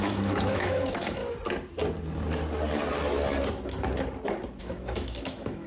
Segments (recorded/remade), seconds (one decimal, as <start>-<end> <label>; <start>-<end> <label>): 0.0-1.2 remade; 1.2-4.6 recorded; 4.6-5.7 remade